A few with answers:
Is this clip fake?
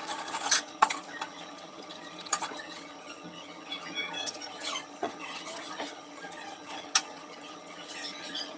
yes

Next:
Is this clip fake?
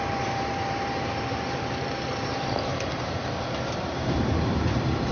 yes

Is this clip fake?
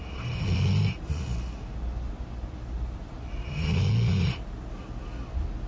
no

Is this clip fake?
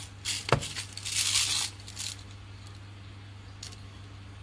no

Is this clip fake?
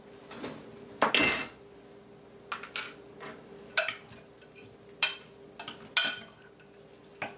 no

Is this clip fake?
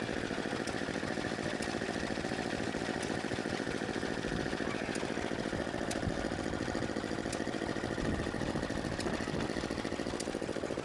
no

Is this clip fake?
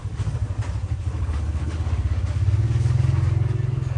yes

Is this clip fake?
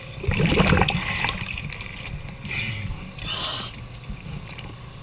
no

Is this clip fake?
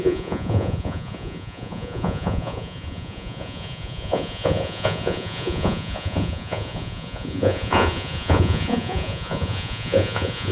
yes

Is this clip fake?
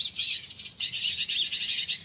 no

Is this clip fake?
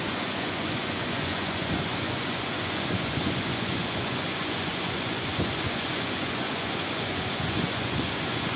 yes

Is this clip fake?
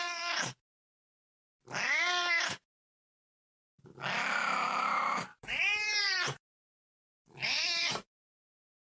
yes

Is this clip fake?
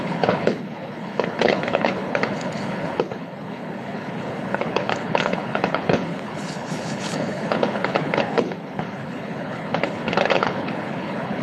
yes